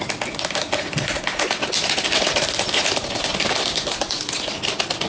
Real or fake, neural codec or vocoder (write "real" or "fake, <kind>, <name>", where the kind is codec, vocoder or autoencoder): real